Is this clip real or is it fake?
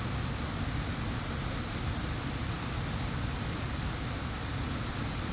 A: real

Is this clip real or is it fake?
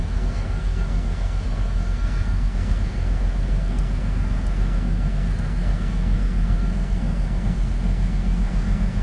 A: fake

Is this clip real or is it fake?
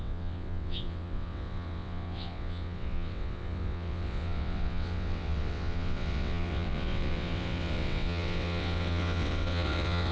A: fake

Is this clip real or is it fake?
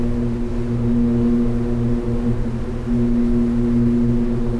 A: real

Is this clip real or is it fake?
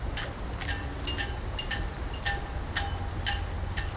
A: real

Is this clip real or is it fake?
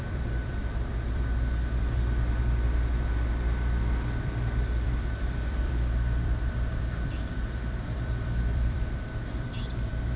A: fake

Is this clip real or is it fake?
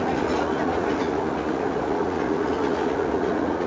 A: fake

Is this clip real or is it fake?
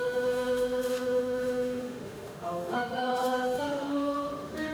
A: fake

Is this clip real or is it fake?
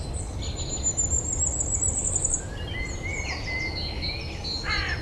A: real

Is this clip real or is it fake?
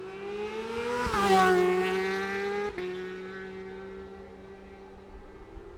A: real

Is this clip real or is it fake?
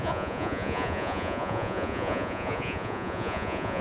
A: fake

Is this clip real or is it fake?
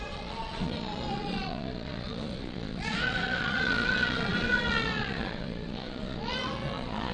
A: fake